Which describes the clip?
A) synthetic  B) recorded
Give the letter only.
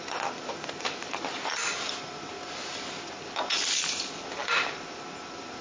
A